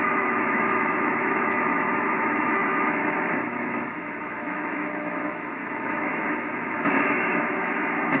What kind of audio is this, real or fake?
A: fake